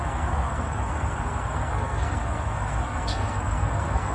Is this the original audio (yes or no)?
no